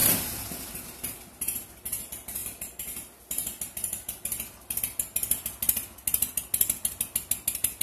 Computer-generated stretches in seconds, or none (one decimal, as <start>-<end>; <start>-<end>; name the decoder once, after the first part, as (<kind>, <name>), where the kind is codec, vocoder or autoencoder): none